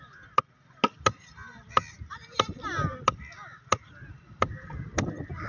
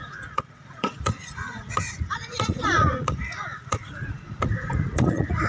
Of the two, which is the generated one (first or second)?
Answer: second